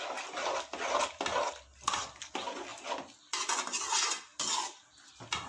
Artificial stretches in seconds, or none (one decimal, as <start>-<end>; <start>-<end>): 2.7-3.5; 4.3-5.1